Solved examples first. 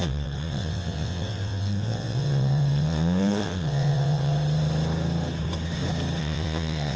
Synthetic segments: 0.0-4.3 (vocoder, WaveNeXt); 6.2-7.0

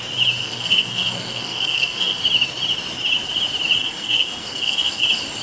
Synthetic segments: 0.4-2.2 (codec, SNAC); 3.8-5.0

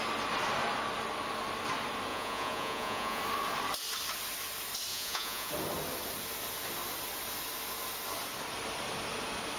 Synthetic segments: 2.1-3.2 (vocoder, Vocos); 4.9-5.5